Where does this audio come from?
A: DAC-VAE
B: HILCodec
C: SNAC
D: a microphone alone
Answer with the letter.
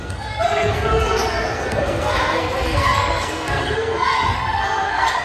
C